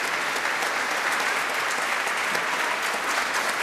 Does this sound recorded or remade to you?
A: recorded